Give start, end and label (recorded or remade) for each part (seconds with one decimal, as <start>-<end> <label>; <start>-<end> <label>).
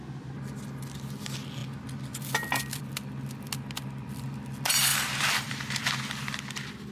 0.0-4.9 recorded; 4.9-5.6 remade; 5.6-6.9 recorded